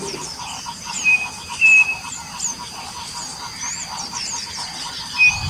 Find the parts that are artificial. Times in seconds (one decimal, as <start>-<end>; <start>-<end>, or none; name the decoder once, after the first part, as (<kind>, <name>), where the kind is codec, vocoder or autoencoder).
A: 0.0-5.5 (vocoder, BigVGAN v2)